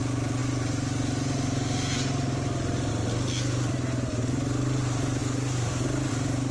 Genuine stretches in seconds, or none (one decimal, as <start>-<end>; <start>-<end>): 0.0-6.5